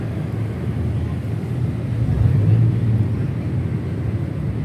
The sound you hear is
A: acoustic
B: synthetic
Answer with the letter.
A